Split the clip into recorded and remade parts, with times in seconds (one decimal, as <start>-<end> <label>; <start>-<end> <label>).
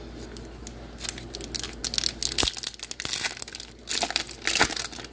0.0-5.1 recorded